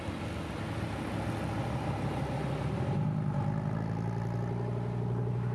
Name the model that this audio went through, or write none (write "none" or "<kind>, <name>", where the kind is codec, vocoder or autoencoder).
none